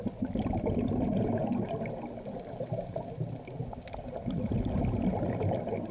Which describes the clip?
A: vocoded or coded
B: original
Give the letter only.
B